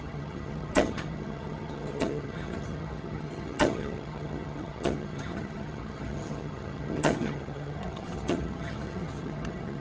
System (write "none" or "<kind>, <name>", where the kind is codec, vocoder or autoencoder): vocoder, HiFi-GAN